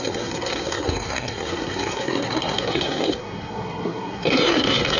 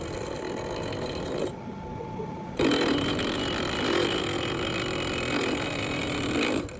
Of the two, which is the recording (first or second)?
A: second